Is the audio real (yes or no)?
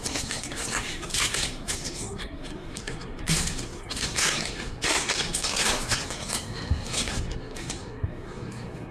no